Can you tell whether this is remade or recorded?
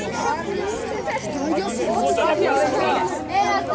recorded